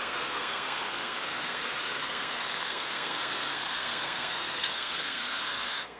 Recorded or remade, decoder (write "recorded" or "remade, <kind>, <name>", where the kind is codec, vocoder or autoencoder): remade, codec, SNAC